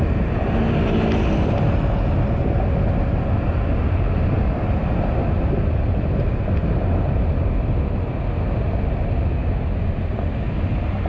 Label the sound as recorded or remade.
recorded